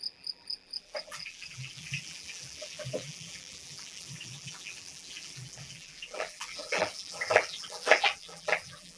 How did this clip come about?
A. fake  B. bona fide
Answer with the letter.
A